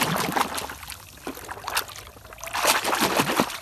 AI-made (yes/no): no